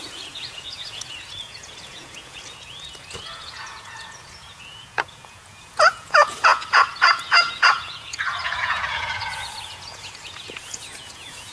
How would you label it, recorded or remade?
remade